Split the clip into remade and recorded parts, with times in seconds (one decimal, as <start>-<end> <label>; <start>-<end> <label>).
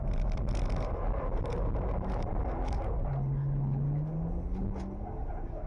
0.0-5.7 recorded